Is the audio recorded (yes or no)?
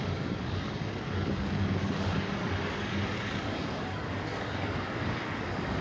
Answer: no